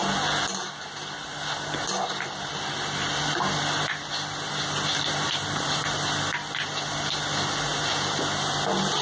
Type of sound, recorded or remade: recorded